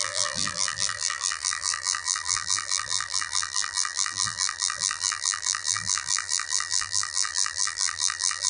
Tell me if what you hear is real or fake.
fake